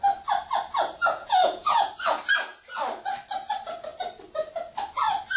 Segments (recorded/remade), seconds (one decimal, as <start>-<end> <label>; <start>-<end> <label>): 0.0-1.2 recorded; 1.2-1.9 remade; 1.9-5.4 recorded